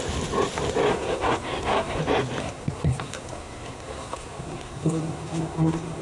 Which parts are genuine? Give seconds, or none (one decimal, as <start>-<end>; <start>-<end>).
0.0-0.9; 2.0-2.4